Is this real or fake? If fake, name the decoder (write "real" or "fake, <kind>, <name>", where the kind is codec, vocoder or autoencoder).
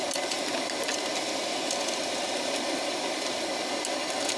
real